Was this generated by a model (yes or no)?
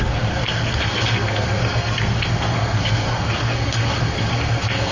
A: yes